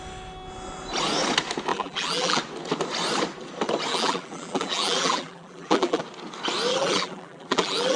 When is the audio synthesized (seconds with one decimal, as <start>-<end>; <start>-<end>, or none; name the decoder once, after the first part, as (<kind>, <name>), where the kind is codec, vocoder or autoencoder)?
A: 1.7-2.4 (vocoder, BigVGAN v2); 3.9-6.0; 6.7-8.0